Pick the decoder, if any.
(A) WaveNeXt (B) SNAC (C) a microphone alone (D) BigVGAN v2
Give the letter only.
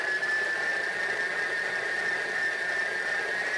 D